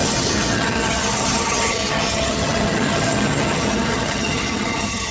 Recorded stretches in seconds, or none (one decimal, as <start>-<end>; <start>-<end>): none